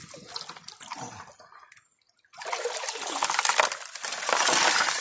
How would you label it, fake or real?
real